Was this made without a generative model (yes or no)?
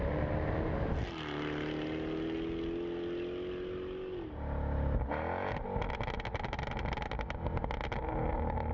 yes